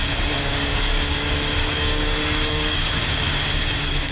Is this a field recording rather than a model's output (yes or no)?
no